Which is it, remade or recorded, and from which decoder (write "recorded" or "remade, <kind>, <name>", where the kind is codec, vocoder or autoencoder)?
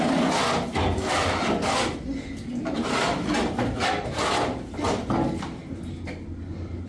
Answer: recorded